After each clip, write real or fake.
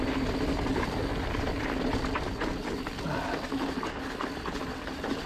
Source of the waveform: real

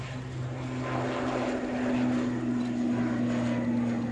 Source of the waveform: real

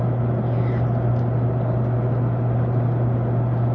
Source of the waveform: real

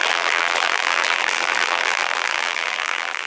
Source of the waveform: fake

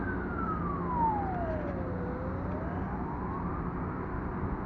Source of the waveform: real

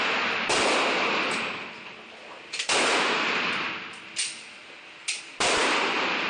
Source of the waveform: real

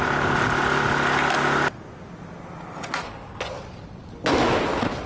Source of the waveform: real